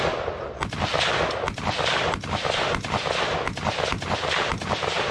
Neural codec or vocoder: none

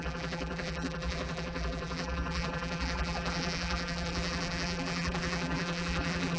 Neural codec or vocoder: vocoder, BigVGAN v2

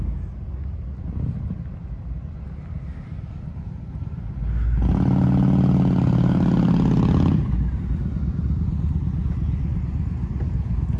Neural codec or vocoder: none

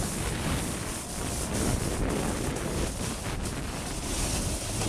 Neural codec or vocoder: none